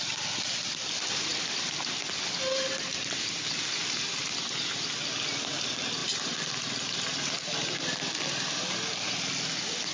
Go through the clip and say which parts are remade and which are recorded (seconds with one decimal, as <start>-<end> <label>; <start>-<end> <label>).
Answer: 0.0-6.0 recorded; 6.0-8.6 remade; 8.6-9.9 recorded